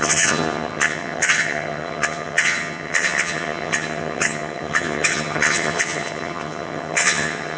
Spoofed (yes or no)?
yes